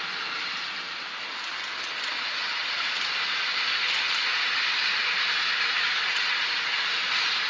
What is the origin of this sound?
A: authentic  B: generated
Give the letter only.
A